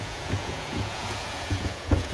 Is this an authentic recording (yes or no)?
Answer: no